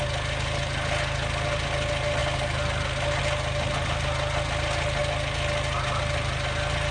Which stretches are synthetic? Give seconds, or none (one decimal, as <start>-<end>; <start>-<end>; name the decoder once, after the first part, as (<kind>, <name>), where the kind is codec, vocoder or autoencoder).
none